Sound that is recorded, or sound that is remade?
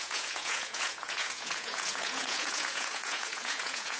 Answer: remade